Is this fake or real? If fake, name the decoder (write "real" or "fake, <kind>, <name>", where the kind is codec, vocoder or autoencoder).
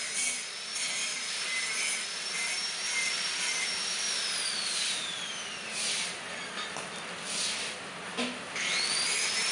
real